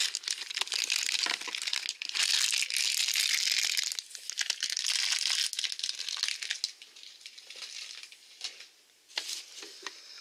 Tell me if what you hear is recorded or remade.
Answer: recorded